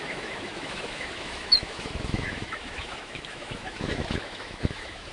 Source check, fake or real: fake